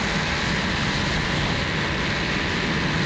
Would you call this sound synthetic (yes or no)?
no